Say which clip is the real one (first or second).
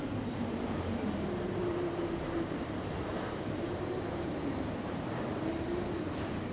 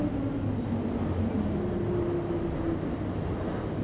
second